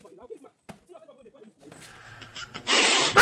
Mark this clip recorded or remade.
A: recorded